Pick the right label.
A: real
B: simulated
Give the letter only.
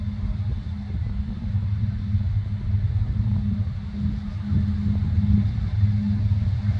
A